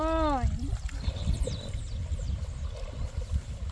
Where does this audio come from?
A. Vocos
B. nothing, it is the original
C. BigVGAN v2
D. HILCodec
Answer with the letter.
B